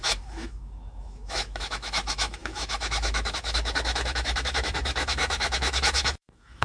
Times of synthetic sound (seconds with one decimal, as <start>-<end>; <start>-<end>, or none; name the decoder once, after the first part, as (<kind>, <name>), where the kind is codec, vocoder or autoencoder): 0.0-6.6 (autoencoder, DAC-VAE)